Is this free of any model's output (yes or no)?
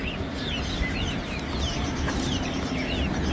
yes